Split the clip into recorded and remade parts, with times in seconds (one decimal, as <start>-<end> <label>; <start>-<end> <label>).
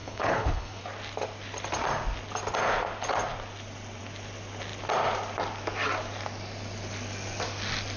0.0-0.8 remade; 0.8-8.0 recorded